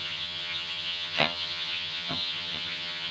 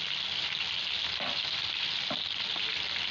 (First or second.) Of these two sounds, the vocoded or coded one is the first